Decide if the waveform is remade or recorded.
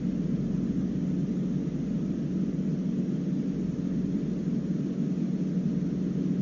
recorded